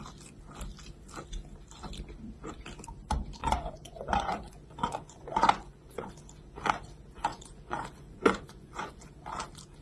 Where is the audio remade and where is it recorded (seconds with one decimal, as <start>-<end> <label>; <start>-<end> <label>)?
0.0-3.4 recorded; 3.4-6.1 remade; 6.1-7.3 recorded; 7.3-9.1 remade; 9.1-9.8 recorded